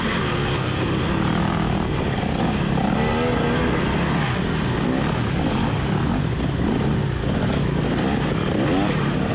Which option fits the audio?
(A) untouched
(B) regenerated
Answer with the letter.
A